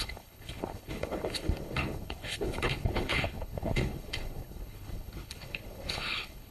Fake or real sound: fake